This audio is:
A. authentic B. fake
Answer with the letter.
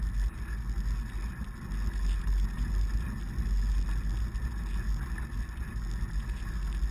A